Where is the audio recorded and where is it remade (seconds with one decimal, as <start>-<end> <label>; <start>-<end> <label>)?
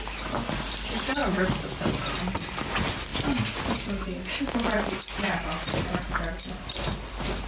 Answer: 0.0-7.5 recorded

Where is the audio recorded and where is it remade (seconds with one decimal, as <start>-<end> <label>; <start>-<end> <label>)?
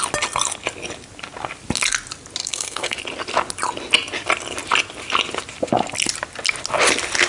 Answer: 0.0-2.4 recorded; 2.4-3.0 remade; 3.0-7.3 recorded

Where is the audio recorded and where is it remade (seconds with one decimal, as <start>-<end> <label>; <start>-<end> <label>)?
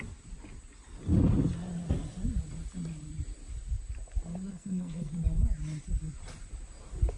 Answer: 0.0-4.5 recorded; 4.5-5.1 remade; 5.1-7.2 recorded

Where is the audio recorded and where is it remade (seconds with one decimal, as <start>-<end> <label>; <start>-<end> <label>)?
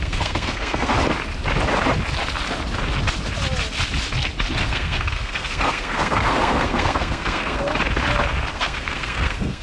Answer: 0.0-0.9 remade; 0.9-4.6 recorded; 4.6-7.7 remade; 7.7-8.5 recorded; 8.5-9.6 remade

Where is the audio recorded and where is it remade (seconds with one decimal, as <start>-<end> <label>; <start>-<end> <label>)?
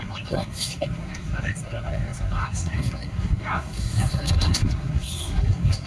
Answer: 0.0-5.9 remade